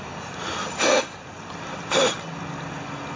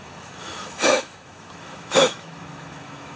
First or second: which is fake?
second